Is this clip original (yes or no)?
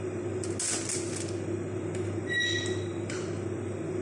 yes